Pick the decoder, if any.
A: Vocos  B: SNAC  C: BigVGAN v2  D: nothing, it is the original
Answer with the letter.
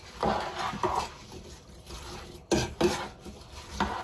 D